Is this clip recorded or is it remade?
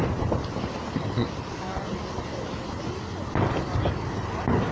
recorded